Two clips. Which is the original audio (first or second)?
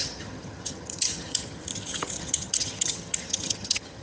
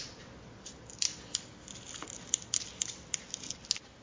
second